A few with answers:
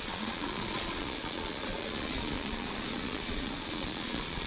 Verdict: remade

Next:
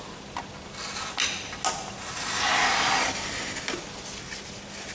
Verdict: recorded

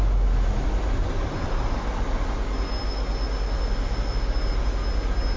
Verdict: recorded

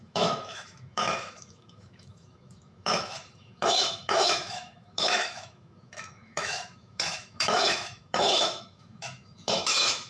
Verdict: remade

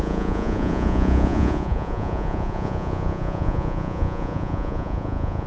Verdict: remade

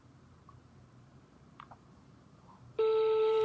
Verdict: remade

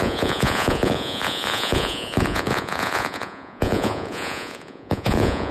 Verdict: remade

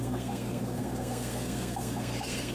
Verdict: remade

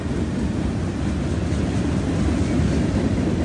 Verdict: recorded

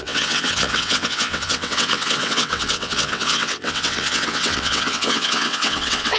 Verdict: remade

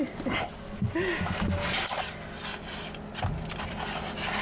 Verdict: recorded